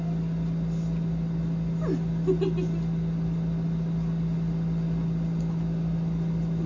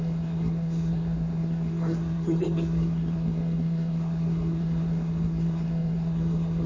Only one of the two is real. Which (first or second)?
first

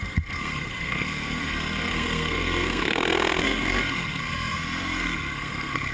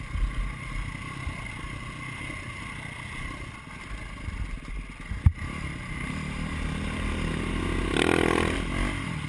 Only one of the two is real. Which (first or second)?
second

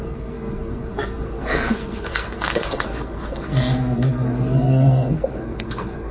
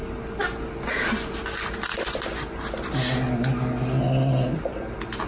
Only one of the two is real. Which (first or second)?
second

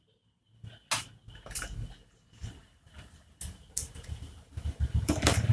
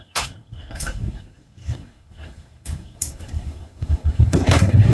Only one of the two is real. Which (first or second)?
first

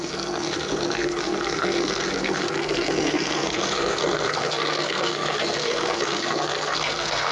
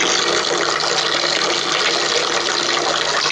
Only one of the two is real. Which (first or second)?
second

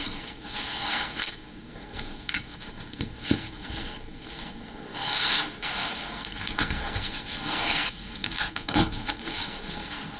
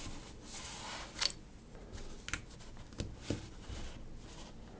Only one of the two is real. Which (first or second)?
second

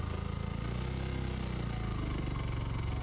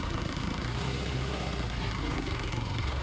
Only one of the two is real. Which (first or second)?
first